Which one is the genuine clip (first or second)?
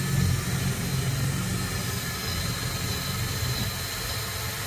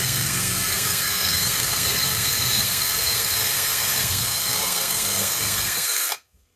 first